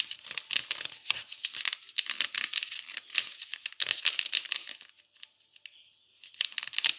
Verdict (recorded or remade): recorded